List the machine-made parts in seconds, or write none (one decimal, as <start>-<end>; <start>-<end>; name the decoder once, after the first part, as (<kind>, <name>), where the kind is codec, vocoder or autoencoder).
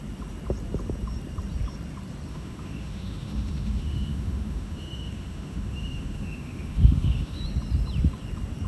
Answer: 2.3-7.4 (autoencoder, DAC-VAE)